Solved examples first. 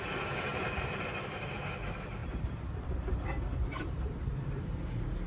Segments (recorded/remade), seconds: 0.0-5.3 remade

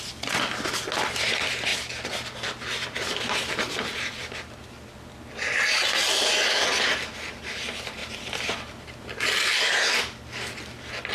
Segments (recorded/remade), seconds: 0.0-1.7 recorded; 1.7-4.6 remade; 4.6-8.0 recorded; 8.0-9.8 remade; 9.8-11.1 recorded

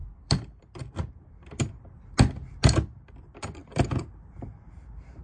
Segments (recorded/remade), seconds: 0.0-3.6 remade; 3.6-4.7 recorded; 4.7-5.2 remade

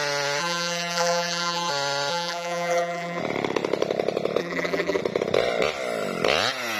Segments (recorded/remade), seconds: 0.0-0.4 recorded; 0.4-1.7 remade; 1.7-2.1 recorded; 2.1-3.2 remade; 3.2-4.4 recorded; 4.4-5.0 remade; 5.0-6.8 recorded